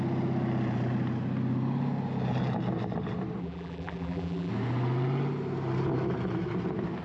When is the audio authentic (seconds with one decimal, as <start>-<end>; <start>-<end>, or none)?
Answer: 0.0-3.4; 4.5-7.0